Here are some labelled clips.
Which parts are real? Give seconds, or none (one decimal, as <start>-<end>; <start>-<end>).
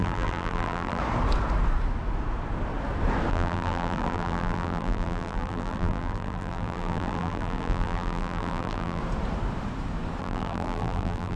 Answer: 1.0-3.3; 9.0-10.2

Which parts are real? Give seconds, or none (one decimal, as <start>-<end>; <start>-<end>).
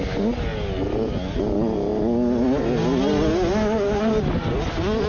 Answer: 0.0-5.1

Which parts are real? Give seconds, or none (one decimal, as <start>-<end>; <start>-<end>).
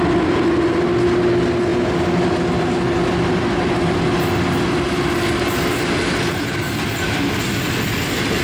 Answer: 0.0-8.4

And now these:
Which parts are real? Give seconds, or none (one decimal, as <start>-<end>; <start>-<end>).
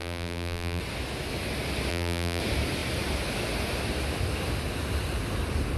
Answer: 0.8-1.9; 2.4-5.8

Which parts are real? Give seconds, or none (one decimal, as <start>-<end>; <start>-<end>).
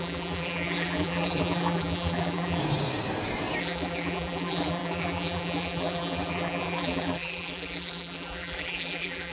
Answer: 2.6-3.6